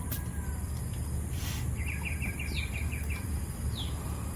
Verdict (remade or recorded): recorded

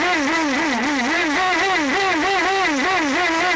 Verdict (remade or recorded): recorded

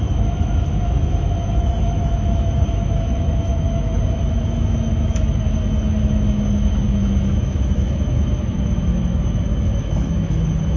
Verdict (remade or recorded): remade